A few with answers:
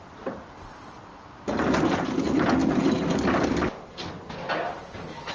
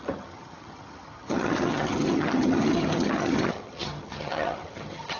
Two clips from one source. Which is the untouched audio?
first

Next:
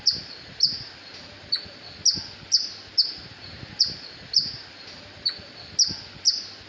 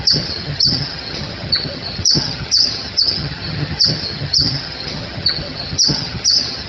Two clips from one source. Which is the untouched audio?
first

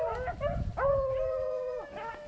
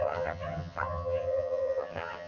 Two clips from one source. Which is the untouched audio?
first